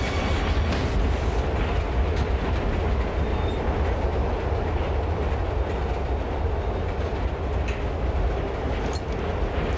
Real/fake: real